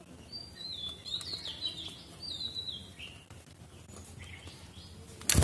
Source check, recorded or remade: recorded